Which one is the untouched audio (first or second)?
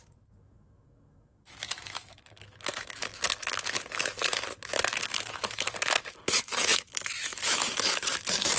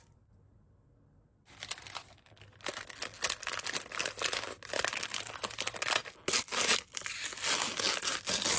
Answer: second